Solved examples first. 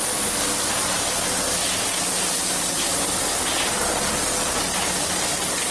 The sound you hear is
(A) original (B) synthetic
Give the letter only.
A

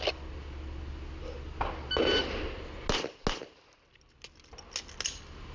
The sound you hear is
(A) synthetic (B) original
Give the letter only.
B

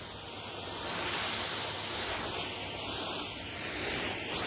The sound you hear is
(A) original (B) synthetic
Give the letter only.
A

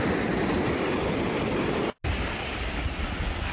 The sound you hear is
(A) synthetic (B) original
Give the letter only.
B